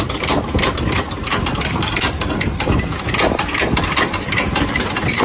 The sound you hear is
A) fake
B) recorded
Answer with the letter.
B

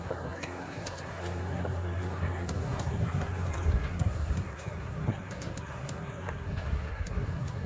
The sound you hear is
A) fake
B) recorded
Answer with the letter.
A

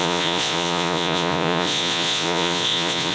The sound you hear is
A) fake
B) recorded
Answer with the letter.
A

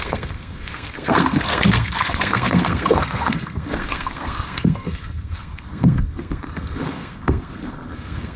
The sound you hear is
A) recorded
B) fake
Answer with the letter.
B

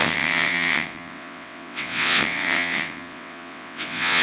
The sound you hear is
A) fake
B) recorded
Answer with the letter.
A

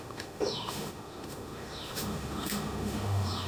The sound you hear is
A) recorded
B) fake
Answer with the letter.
B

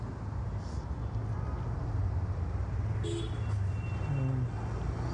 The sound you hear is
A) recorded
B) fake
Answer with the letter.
A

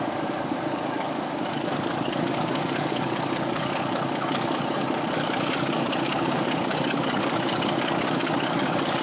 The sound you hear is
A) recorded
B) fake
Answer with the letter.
B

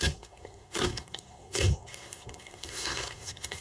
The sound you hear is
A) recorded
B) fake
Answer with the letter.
B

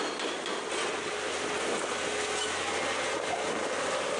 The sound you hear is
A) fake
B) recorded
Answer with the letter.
B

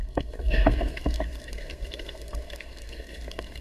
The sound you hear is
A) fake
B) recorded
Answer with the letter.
A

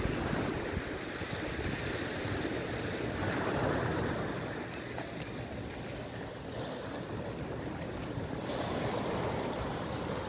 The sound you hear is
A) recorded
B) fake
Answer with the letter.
A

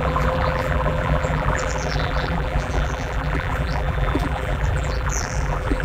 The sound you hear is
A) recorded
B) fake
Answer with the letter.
B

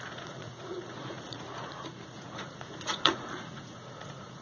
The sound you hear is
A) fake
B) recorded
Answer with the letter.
A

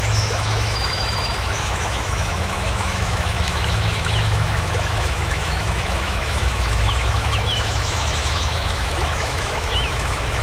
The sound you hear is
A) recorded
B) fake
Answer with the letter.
B